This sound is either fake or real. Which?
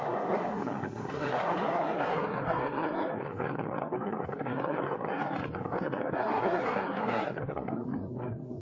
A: fake